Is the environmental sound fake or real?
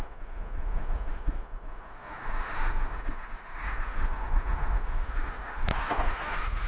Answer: fake